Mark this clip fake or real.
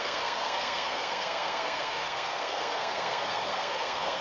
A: fake